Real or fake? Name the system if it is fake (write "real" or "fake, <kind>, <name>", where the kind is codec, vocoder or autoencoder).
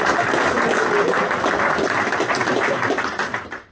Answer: real